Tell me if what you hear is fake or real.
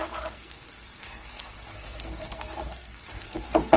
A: fake